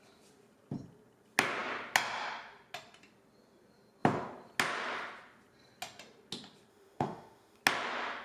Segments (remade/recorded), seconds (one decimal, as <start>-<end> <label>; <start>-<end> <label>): 0.0-6.7 recorded; 6.7-7.6 remade; 7.6-8.2 recorded